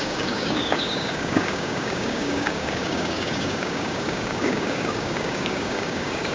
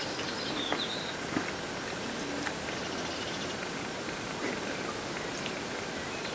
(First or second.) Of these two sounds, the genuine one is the second